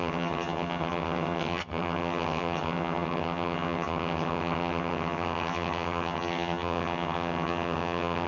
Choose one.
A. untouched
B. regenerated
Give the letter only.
B